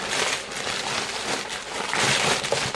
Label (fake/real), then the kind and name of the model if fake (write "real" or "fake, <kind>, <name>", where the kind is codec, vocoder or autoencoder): real